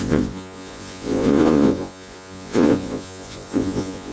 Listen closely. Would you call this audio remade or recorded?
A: remade